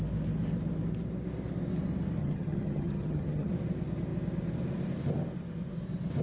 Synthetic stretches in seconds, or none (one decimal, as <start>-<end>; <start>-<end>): 2.2-3.5